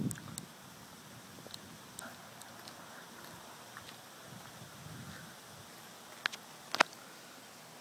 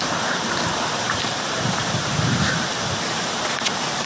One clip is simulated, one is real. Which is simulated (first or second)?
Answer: second